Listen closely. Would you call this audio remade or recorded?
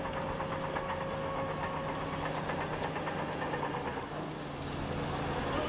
recorded